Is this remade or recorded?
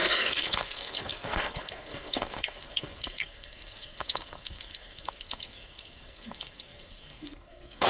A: remade